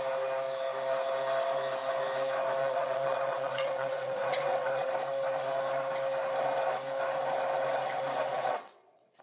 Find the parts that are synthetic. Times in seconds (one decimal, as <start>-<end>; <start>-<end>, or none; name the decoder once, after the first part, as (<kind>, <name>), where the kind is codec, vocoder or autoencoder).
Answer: 2.6-4.9 (vocoder, WaveNeXt); 8.3-9.2